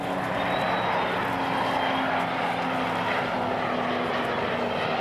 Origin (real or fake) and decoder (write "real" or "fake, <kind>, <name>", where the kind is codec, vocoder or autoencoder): real